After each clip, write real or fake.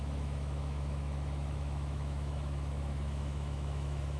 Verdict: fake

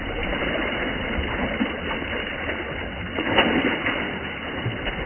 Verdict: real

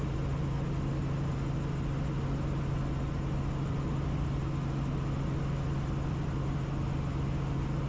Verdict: real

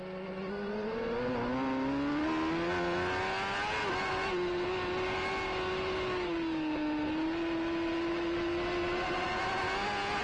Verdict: real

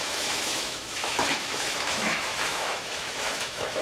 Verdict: fake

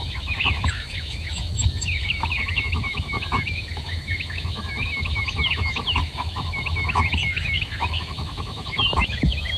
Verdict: fake